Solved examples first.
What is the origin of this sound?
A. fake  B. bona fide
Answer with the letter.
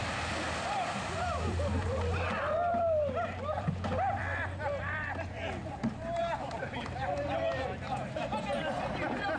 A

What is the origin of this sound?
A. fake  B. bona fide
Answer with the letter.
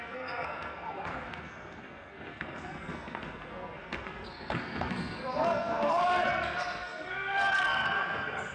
A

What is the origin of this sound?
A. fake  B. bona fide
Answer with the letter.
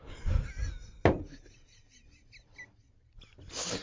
B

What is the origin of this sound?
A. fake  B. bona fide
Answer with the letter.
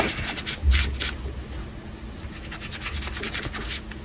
B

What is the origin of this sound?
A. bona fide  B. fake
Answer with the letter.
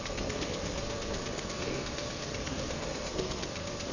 B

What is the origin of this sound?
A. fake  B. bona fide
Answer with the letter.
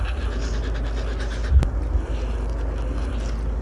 B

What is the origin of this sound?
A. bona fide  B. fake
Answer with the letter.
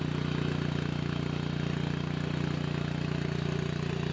A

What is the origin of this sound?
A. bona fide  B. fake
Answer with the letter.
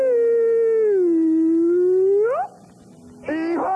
A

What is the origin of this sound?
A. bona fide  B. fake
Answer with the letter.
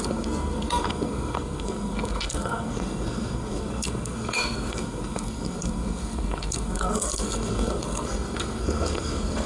B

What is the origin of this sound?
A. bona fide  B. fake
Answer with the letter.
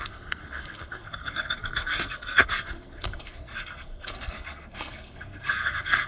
B